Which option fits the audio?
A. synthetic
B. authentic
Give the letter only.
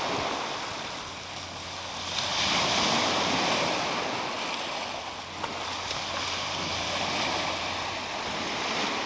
B